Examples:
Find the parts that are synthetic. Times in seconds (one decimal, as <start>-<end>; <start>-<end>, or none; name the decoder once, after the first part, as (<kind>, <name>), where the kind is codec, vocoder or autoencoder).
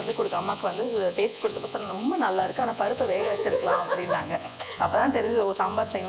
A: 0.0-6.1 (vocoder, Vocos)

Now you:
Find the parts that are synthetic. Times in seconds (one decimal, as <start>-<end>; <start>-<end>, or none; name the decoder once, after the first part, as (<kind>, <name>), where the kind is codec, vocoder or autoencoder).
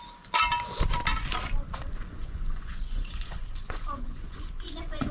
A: 1.8-5.1 (vocoder, Vocos)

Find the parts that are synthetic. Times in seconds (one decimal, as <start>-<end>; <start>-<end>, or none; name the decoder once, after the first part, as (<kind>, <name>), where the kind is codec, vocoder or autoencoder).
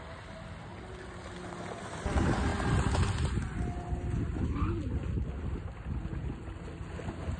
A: none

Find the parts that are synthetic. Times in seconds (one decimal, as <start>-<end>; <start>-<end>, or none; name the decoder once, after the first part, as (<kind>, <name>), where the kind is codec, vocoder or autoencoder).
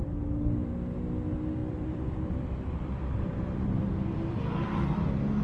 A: 1.6-4.8 (vocoder, BigVGAN v2)